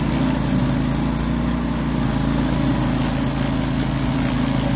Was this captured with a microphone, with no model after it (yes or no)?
yes